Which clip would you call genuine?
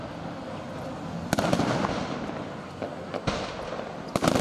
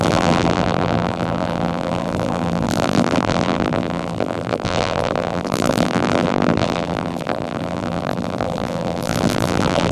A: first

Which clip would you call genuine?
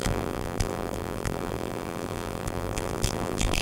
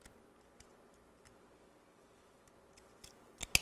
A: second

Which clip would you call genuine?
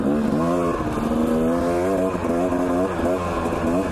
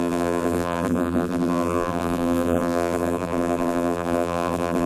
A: first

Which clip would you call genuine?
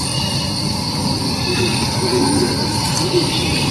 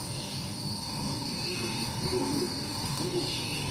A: first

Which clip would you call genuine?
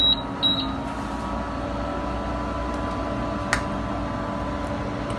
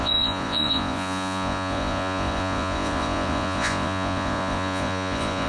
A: first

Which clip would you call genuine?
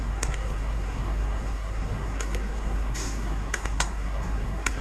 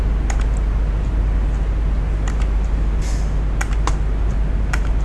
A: second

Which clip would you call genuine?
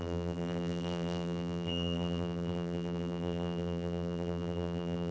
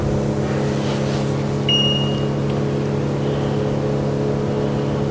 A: second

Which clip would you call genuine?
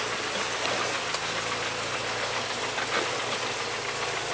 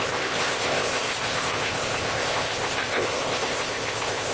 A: first